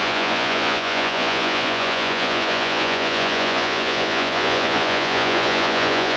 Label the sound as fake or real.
fake